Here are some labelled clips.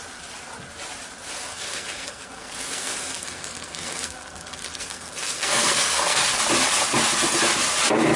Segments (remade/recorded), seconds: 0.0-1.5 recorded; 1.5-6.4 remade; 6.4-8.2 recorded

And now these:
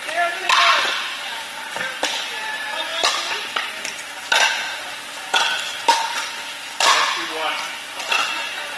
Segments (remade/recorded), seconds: 0.0-2.9 remade; 2.9-7.5 recorded; 7.5-8.8 remade

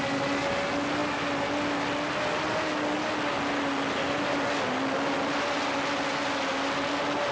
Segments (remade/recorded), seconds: 0.0-7.3 recorded

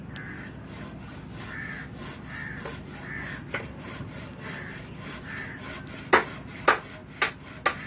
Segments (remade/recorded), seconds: 0.0-7.9 recorded

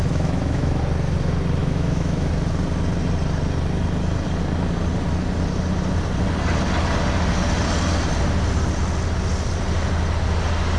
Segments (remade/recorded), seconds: 0.0-0.8 remade; 0.8-1.6 recorded; 1.6-2.3 remade; 2.3-10.8 recorded

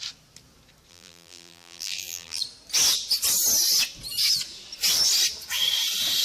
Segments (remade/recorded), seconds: 0.0-0.9 recorded; 0.9-2.4 remade; 2.4-6.2 recorded